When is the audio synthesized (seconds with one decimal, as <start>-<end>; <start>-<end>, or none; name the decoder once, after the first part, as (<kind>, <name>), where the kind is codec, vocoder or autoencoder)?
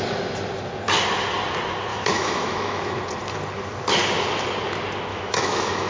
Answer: 1.9-3.0 (autoencoder, DAC-VAE); 5.1-5.9